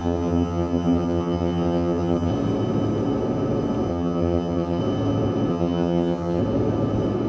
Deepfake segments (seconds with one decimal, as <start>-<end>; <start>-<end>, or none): 0.0-2.3; 3.9-4.8; 5.5-6.4